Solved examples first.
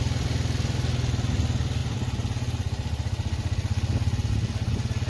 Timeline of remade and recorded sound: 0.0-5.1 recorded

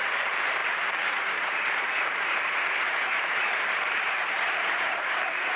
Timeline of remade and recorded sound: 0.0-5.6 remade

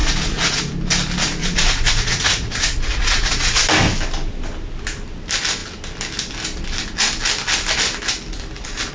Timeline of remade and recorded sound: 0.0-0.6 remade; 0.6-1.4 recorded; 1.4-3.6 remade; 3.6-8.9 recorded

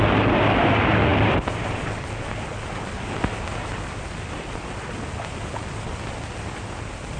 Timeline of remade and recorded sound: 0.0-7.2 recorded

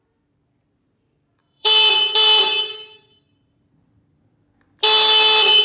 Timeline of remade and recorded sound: 0.0-1.4 recorded; 1.4-3.7 remade; 3.7-5.6 recorded

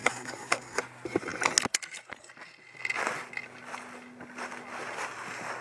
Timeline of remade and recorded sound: 0.0-0.8 remade; 0.8-5.6 recorded

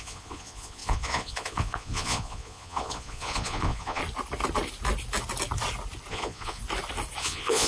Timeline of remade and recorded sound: 0.0-4.0 remade; 4.0-6.1 recorded; 6.1-6.6 remade; 6.6-7.2 recorded; 7.2-7.7 remade

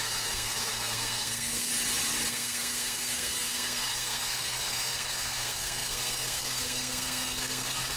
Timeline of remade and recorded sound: 0.0-1.7 remade; 1.7-2.3 recorded; 2.3-8.0 remade